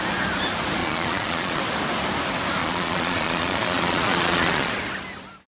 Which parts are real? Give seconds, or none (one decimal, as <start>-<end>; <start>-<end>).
0.0-0.8; 1.6-2.6; 4.7-5.5